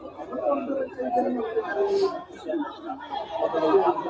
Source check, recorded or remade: recorded